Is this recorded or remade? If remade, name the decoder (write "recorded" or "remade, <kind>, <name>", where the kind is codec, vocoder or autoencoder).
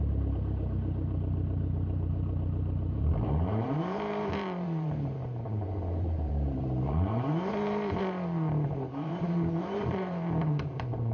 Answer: remade, vocoder, BigVGAN v2